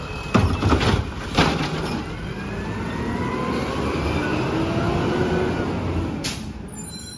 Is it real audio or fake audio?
real